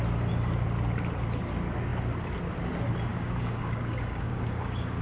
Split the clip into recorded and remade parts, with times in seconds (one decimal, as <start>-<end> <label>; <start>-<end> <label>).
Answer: 0.0-3.1 recorded; 3.1-5.0 remade